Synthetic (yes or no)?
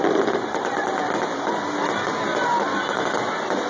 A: no